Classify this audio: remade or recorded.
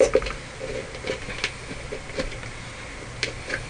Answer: recorded